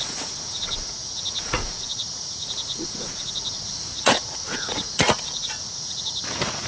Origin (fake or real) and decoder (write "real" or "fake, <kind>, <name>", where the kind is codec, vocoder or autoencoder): fake, vocoder, Vocos